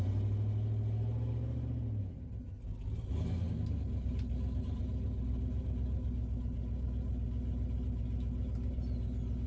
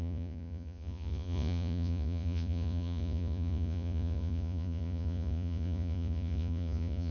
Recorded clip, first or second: first